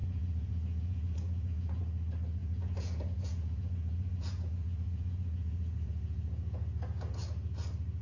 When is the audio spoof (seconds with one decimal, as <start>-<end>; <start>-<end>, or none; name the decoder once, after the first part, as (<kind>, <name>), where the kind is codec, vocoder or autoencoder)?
0.0-1.8 (vocoder, Vocos); 2.4-7.2